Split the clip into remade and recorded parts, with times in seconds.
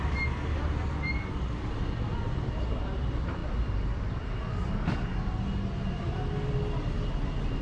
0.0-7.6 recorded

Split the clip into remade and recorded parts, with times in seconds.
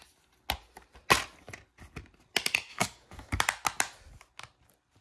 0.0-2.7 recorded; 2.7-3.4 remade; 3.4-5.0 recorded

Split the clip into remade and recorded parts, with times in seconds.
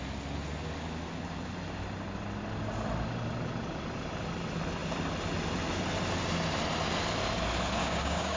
0.0-7.8 recorded; 7.8-8.4 remade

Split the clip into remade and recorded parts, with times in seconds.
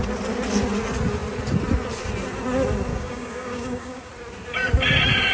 0.0-2.9 recorded; 2.9-4.1 remade; 4.1-5.3 recorded